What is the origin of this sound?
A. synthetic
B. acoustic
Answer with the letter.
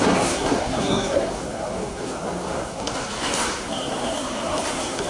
A